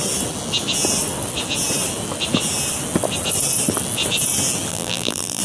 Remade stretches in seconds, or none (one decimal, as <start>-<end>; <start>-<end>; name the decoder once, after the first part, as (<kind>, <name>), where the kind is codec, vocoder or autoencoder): 4.7-5.4 (vocoder, BigVGAN v2)